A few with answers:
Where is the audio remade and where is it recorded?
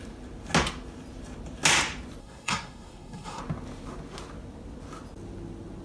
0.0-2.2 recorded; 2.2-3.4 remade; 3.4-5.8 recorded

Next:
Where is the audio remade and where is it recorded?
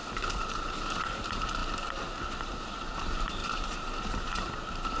0.0-1.6 remade; 1.6-2.5 recorded; 2.5-5.0 remade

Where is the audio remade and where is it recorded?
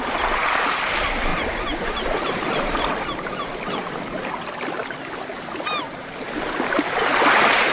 0.0-1.3 recorded; 1.3-2.8 remade; 2.8-7.7 recorded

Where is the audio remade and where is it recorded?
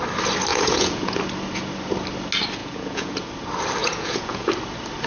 0.0-0.5 recorded; 0.5-1.2 remade; 1.2-2.6 recorded; 2.6-3.3 remade; 3.3-3.8 recorded; 3.8-4.5 remade; 4.5-5.1 recorded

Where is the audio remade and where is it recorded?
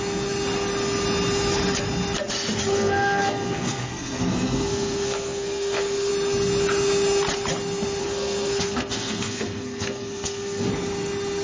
0.0-2.7 recorded; 2.7-6.1 remade; 6.1-8.0 recorded; 8.0-10.7 remade; 10.7-11.4 recorded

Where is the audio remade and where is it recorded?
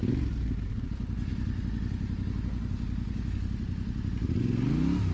0.0-5.1 recorded